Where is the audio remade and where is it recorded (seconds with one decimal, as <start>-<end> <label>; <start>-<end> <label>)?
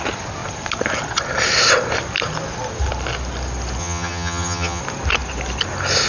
0.0-3.8 recorded; 3.8-4.8 remade; 4.8-6.1 recorded